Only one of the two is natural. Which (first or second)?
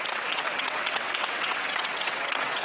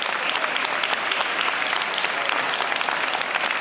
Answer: second